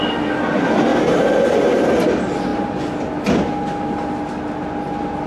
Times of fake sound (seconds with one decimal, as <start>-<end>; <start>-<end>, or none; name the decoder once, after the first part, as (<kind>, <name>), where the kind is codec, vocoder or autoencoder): 0.9-1.8 (vocoder, BigVGAN v2)